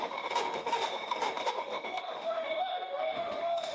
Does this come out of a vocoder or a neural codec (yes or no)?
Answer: yes